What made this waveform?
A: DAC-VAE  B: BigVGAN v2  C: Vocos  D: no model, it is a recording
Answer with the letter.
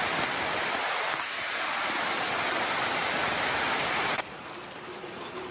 B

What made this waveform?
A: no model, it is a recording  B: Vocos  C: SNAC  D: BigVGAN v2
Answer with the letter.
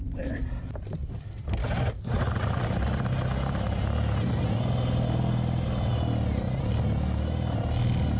A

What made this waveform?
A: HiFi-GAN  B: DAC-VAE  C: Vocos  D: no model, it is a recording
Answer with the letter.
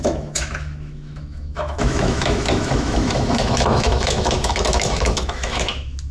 B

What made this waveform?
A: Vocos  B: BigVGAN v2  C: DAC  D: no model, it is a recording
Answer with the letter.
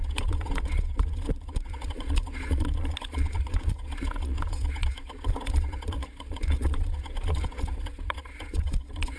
A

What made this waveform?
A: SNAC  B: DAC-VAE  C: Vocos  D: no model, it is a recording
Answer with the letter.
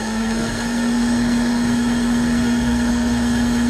A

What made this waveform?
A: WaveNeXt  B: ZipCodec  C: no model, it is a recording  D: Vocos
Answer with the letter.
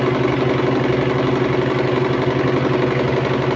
C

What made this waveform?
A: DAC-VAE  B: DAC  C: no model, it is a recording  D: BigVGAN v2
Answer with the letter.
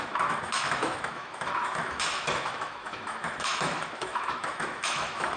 A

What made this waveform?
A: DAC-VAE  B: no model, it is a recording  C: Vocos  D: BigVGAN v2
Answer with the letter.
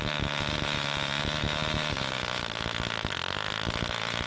B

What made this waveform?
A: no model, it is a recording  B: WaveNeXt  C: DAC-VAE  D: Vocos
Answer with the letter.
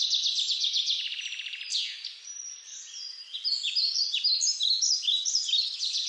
A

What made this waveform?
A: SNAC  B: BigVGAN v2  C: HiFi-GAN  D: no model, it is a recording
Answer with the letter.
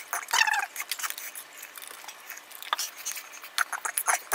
D